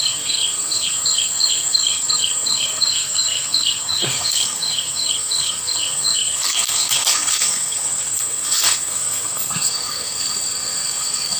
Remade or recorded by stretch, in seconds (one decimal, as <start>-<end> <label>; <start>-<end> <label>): 0.0-11.4 remade